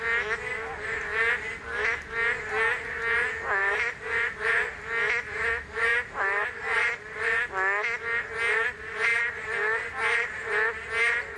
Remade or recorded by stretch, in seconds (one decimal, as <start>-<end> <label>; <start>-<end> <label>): 0.0-3.6 recorded; 3.6-4.3 remade; 4.3-5.9 recorded; 5.9-6.6 remade; 6.6-9.1 recorded; 9.1-9.8 remade; 9.8-11.4 recorded